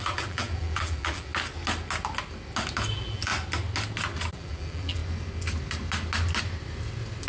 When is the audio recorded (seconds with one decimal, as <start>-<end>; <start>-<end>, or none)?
1.3-2.9; 3.3-4.3; 5.0-7.3